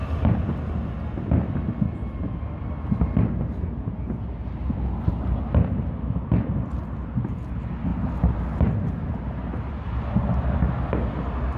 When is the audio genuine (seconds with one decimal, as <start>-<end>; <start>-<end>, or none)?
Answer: 0.0-11.6